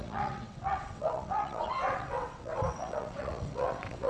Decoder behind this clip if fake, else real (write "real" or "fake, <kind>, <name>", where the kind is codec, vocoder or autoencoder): fake, vocoder, WaveNeXt